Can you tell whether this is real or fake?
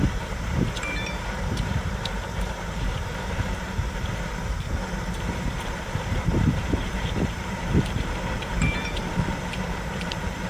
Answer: fake